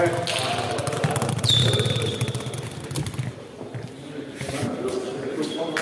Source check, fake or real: real